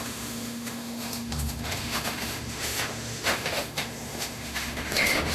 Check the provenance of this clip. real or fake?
fake